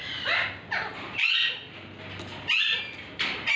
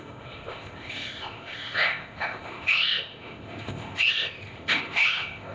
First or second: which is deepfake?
second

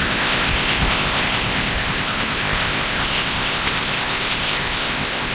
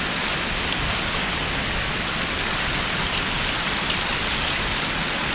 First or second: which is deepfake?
first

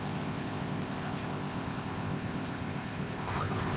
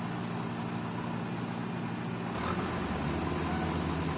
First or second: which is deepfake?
first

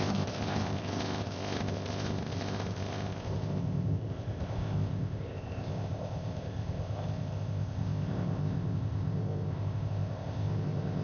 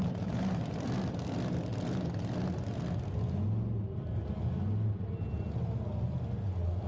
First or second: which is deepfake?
first